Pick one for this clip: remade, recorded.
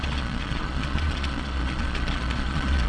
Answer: remade